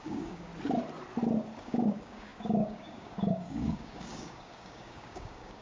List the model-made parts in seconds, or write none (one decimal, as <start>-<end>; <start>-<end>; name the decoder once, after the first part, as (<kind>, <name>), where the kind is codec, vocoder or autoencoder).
0.0-0.5 (codec, DAC); 1.6-5.6